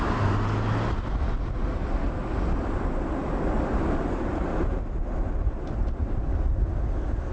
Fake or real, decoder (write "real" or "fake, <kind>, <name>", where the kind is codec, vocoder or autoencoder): real